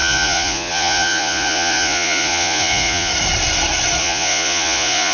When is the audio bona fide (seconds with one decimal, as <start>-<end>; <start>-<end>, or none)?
3.1-4.0